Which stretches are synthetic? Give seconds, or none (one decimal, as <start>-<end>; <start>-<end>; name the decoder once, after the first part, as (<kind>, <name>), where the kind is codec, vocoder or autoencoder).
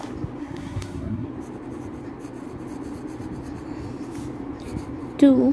0.4-1.3 (codec, SNAC)